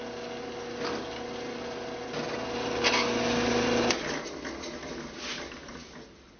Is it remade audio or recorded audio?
recorded